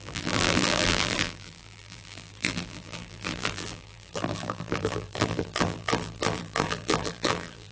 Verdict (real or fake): fake